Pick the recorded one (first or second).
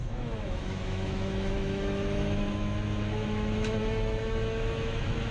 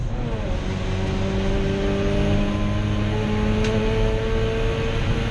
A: second